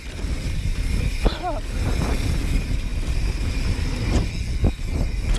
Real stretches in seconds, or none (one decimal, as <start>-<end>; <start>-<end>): 0.0-5.4